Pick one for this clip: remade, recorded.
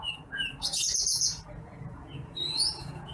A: remade